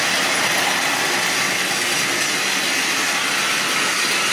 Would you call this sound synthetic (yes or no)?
no